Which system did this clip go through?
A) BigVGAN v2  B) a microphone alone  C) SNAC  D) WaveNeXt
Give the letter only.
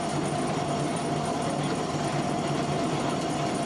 B